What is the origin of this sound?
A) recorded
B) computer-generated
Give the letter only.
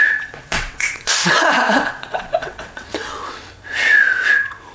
B